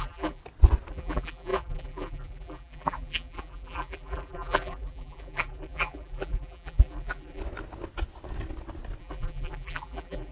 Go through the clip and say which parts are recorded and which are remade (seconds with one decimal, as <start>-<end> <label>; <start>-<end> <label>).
0.0-0.4 remade; 0.4-0.9 recorded; 0.9-7.4 remade; 7.4-9.0 recorded; 9.0-10.3 remade